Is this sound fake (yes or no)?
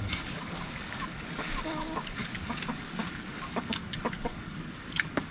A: yes